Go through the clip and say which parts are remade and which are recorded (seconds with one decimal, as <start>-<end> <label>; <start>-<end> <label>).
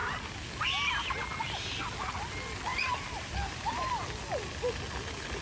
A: 0.0-0.5 remade; 0.5-2.7 recorded; 2.7-3.9 remade; 3.9-5.4 recorded